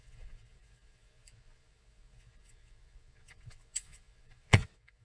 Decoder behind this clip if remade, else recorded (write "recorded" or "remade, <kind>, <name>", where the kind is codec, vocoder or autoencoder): remade, vocoder, Vocos